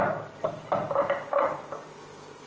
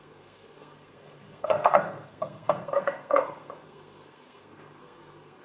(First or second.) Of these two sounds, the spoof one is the second